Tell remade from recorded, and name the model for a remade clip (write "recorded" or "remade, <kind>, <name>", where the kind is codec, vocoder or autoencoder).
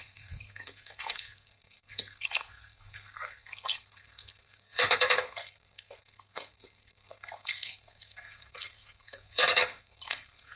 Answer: remade, codec, SNAC